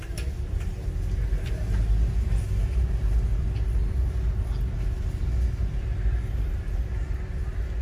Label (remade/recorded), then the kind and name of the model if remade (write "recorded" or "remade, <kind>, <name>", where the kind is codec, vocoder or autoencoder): recorded